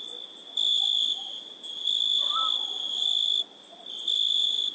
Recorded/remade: recorded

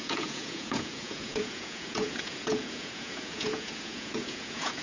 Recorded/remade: remade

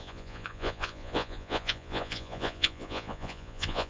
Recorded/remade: remade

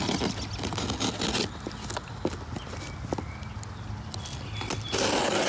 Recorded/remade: recorded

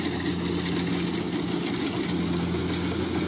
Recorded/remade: recorded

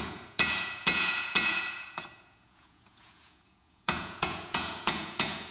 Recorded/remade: remade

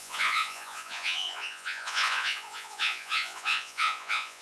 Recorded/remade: remade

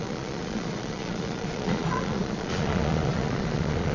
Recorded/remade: remade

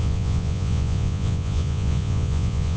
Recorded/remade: remade